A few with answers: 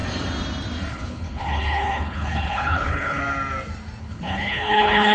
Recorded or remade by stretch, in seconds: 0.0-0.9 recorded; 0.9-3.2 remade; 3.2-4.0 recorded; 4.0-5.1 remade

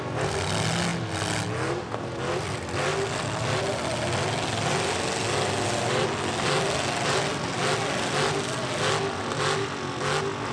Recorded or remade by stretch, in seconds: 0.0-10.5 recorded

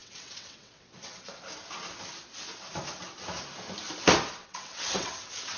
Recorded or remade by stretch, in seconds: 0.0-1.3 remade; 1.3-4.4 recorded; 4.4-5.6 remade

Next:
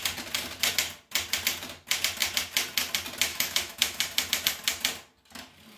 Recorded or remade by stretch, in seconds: 0.0-3.3 recorded; 3.3-4.0 remade; 4.0-5.8 recorded

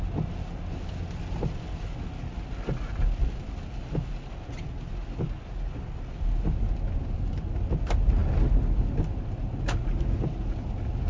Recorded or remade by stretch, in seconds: 0.0-11.1 recorded